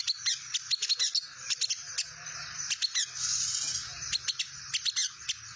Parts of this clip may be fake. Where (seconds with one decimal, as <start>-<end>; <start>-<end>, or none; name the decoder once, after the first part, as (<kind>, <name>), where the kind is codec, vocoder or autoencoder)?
none